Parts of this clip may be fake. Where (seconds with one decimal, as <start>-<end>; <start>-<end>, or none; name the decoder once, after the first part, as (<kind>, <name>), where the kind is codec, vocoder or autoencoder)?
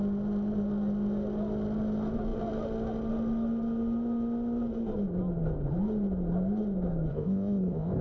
7.1-8.0 (codec, ZipCodec)